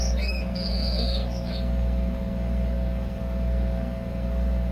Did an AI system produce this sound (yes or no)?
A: yes